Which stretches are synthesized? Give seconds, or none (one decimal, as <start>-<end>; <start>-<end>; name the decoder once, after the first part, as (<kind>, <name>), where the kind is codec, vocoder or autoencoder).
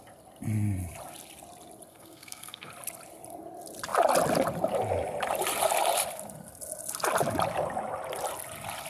1.9-2.7 (codec, SNAC)